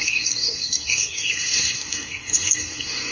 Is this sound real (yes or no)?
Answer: no